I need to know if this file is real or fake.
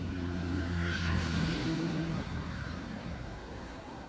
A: fake